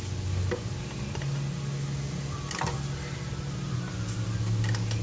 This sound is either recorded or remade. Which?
recorded